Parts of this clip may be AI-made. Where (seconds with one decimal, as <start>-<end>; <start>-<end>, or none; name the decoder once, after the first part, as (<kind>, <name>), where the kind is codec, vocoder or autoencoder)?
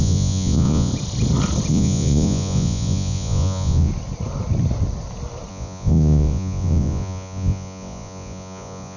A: 0.0-0.9 (vocoder, Vocos); 1.7-3.9; 5.5-9.0